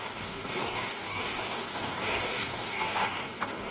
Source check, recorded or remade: remade